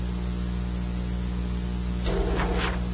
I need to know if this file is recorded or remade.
recorded